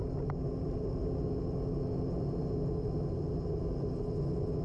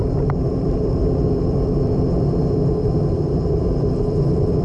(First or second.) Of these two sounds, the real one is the first